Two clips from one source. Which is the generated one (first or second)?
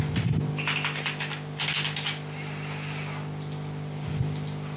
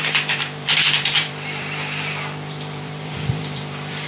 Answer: second